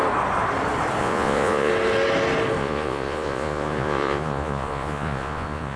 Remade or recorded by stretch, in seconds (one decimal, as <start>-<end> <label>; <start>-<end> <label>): 0.0-1.0 recorded; 1.0-1.7 remade; 1.7-2.6 recorded; 2.6-5.8 remade